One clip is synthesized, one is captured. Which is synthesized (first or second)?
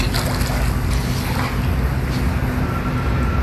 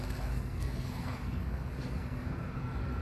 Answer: second